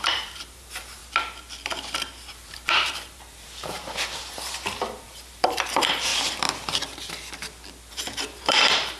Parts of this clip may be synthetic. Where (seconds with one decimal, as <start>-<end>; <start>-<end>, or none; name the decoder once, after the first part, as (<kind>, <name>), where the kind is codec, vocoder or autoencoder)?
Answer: 0.0-1.0 (vocoder, BigVGAN v2); 2.3-6.1; 7.9-9.0